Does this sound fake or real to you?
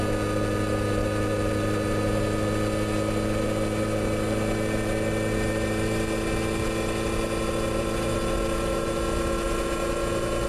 real